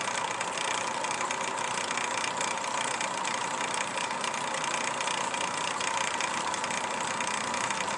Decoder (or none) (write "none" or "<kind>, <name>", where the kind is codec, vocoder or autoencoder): vocoder, BigVGAN v2